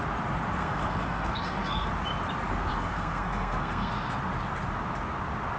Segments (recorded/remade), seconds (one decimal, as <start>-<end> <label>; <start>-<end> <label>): 0.0-0.6 recorded; 0.6-1.9 remade; 1.9-2.7 recorded; 2.7-3.9 remade; 3.9-5.6 recorded